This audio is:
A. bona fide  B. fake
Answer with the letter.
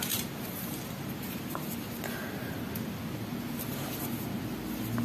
A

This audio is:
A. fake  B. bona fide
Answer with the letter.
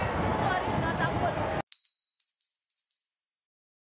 B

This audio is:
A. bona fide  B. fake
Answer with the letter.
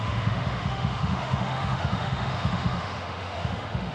B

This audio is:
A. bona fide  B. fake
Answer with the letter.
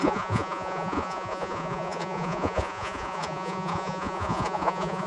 B